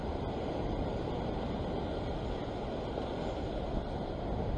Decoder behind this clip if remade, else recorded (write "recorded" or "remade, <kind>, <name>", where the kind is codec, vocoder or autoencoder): recorded